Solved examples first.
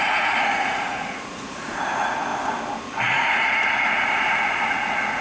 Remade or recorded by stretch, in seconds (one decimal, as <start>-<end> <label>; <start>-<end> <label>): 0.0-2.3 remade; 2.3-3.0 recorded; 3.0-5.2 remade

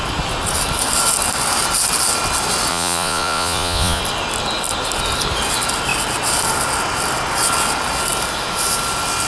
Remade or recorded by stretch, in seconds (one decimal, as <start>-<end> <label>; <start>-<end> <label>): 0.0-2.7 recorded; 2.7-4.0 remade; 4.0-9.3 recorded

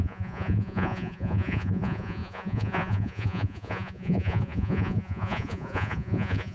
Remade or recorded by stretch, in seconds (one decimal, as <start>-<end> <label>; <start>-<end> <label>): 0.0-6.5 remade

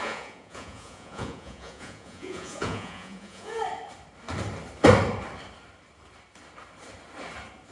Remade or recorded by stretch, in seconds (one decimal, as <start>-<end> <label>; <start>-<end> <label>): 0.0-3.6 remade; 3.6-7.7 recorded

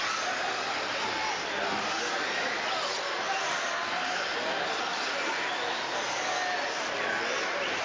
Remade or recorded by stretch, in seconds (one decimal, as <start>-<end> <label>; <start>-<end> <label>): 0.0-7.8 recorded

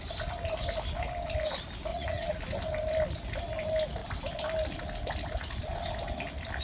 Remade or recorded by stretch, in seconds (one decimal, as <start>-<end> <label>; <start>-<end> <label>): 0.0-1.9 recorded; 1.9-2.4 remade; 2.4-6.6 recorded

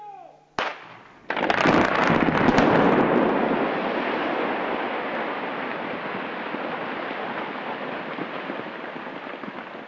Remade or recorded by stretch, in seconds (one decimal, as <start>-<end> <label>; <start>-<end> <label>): 0.0-9.9 recorded